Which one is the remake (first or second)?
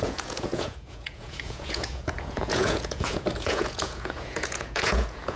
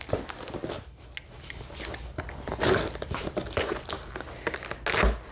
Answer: first